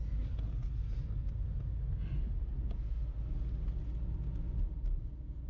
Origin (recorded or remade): recorded